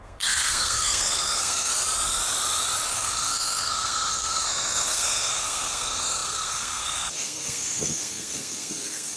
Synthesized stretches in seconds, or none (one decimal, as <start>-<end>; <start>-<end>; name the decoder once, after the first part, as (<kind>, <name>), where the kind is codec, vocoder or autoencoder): 0.0-1.7 (codec, SNAC); 2.9-9.2